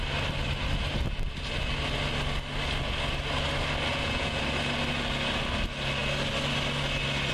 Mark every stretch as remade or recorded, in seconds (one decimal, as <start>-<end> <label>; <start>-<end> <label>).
0.0-3.9 recorded; 3.9-4.4 remade; 4.4-7.3 recorded